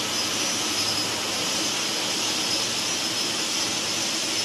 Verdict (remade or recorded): recorded